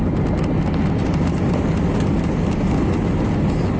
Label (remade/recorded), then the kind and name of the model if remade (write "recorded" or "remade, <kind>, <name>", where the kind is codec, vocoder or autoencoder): recorded